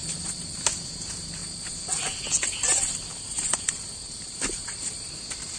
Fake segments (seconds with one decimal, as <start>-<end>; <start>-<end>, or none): 0.0-0.6; 1.4-2.0; 3.1-5.1